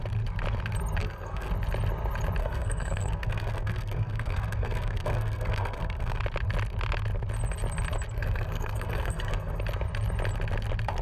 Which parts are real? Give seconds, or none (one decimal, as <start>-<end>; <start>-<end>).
0.0-1.0; 1.5-2.4; 6.2-8.1; 9.6-11.0